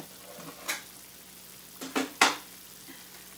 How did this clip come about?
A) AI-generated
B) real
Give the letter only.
B